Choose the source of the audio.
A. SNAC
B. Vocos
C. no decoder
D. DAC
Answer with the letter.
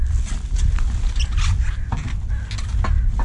C